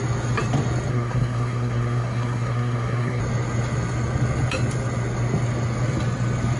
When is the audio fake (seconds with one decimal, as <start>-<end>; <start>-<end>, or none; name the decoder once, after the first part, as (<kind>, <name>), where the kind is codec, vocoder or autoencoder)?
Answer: 0.9-3.2 (codec, SNAC)